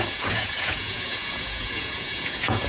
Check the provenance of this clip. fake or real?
fake